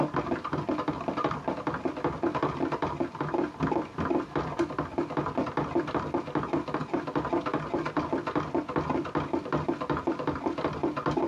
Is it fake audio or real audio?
real